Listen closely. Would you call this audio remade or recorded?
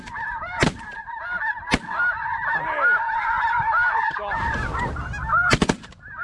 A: recorded